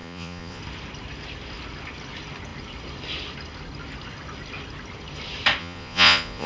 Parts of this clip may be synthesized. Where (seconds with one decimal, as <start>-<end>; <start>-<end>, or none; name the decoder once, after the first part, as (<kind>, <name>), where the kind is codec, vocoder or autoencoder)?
0.0-0.6 (vocoder, Vocos); 5.6-6.5